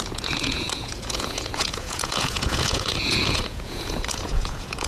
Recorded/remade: remade